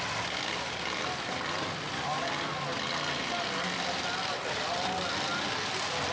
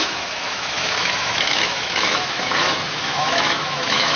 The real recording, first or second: first